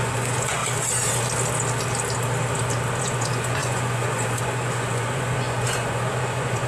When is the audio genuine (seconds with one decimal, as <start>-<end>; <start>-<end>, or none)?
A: 0.6-3.0